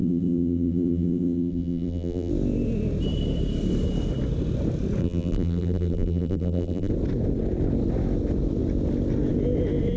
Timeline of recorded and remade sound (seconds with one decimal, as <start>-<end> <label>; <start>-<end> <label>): 0.0-2.3 remade; 2.3-5.0 recorded; 5.0-6.9 remade; 6.9-10.0 recorded